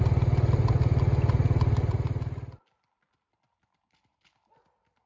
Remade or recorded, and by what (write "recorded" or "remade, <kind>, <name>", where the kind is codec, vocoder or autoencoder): recorded